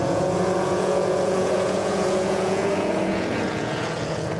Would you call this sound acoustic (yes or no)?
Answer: no